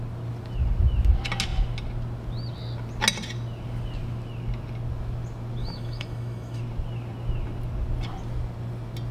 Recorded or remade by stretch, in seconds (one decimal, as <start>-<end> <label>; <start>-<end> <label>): 0.0-5.6 recorded; 5.6-6.6 remade; 6.6-9.1 recorded